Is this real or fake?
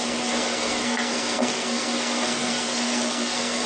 fake